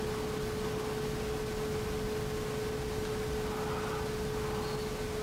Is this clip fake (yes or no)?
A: no